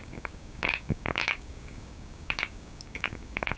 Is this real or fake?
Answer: fake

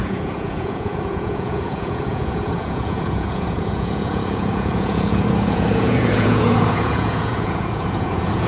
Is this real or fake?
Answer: fake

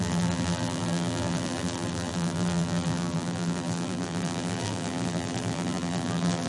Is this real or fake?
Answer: fake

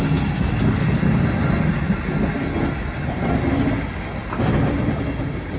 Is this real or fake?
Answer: real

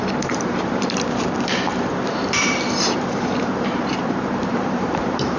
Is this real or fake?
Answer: fake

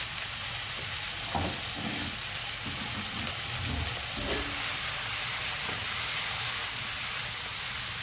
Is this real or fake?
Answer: real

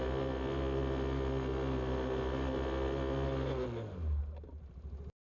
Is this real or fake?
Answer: real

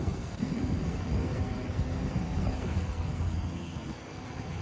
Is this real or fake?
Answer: fake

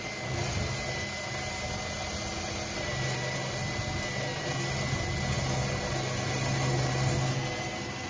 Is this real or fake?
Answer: real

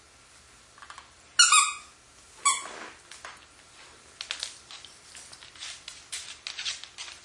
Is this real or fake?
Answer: real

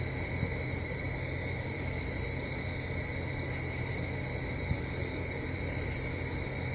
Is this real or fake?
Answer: real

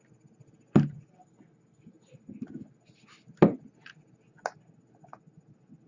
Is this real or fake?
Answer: real